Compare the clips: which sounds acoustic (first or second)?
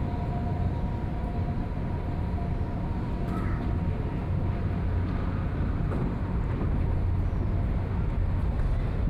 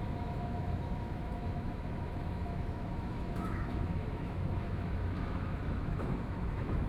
first